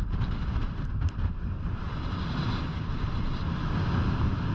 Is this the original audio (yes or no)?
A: yes